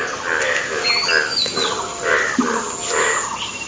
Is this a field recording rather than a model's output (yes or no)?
yes